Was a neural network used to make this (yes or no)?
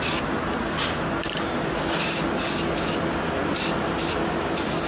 no